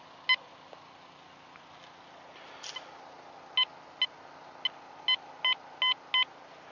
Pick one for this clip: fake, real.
real